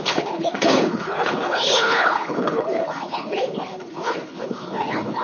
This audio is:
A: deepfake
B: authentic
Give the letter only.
A